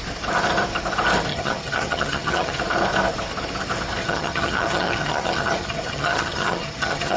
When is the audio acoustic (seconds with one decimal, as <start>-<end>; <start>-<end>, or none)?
0.0-1.3; 2.6-4.0